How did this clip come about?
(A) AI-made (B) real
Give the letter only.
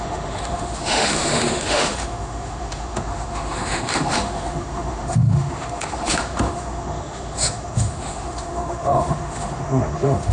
A